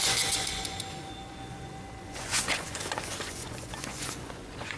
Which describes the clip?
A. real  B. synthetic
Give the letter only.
B